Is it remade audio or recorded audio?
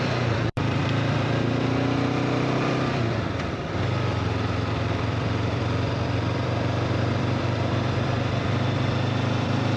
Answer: remade